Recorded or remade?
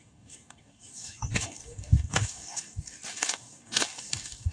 remade